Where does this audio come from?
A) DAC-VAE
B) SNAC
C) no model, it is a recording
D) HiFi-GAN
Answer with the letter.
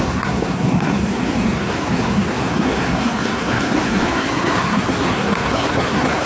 B